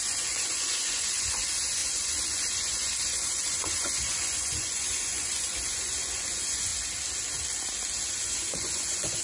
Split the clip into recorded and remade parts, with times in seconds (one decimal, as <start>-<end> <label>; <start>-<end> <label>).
0.0-6.7 remade; 6.7-8.1 recorded; 8.1-9.2 remade